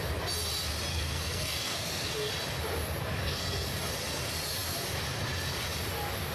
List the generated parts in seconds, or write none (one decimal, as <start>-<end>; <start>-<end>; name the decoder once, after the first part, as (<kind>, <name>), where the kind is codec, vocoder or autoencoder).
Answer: 0.9-2.3 (codec, SNAC); 3.2-3.8